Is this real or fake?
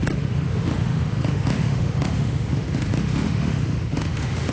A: fake